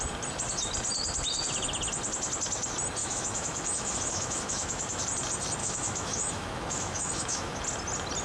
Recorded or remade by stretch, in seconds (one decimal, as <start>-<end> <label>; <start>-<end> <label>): 0.0-3.0 recorded; 3.0-5.0 remade; 5.0-5.6 recorded; 5.6-7.6 remade; 7.6-8.2 recorded

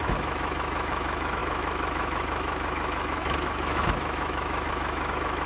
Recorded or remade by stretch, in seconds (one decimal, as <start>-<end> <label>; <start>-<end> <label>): 0.0-5.5 remade

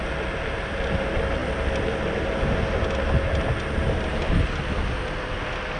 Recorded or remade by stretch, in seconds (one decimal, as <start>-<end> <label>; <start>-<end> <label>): 0.0-5.8 recorded

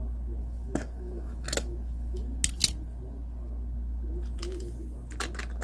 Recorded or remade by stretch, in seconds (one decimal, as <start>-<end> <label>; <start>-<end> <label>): 0.0-0.4 recorded; 0.4-2.2 remade; 2.2-5.6 recorded

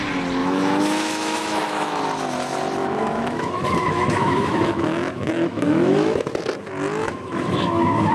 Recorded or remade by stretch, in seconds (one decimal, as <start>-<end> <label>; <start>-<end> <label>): 0.0-0.4 recorded; 0.4-2.0 remade; 2.0-2.8 recorded; 2.8-6.3 remade; 6.3-7.0 recorded; 7.0-8.1 remade

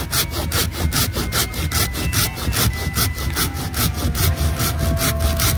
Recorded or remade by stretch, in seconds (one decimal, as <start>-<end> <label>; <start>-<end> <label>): 0.0-5.6 recorded

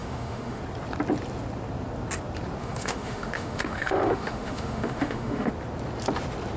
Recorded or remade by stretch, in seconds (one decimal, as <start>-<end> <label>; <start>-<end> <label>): 0.0-0.6 remade; 0.6-2.6 recorded; 2.6-5.5 remade; 5.5-6.6 recorded